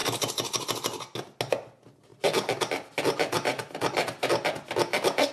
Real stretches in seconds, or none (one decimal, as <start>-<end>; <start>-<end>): 0.0-5.3